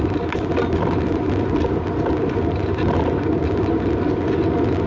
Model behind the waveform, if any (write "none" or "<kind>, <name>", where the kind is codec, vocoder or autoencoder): none